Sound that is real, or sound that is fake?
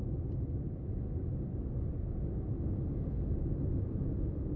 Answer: real